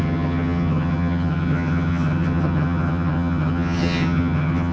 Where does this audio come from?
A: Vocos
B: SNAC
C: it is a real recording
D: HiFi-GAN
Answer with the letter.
D